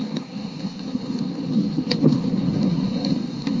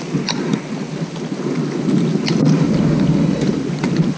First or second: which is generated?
first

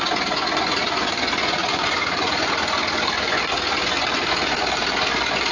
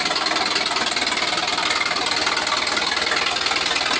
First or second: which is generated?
first